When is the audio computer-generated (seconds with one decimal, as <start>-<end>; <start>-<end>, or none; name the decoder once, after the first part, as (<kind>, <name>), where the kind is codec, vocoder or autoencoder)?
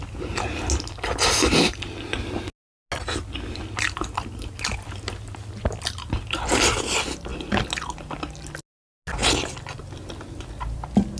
none